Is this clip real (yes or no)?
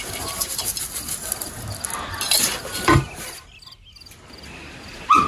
yes